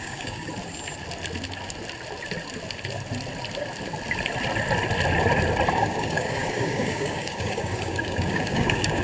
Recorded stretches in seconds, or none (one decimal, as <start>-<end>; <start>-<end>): 0.5-5.7